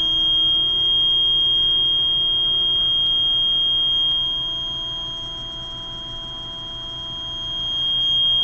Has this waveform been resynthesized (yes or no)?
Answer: no